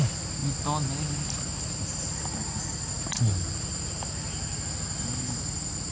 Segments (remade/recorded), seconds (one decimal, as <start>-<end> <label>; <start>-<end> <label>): 0.0-5.9 recorded